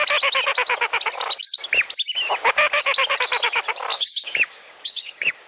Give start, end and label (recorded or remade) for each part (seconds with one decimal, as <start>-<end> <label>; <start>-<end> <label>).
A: 0.0-3.9 recorded; 3.9-5.5 remade